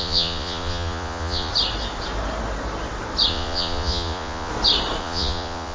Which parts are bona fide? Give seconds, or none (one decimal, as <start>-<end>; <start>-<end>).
1.5-3.3; 4.5-5.0